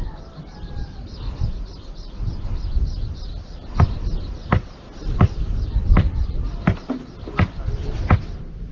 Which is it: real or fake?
real